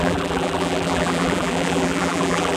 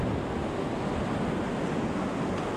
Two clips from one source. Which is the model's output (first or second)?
first